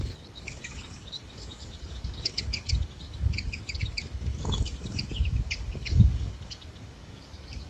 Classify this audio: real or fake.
fake